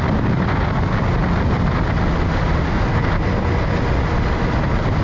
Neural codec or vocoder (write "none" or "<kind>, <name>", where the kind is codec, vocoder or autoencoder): none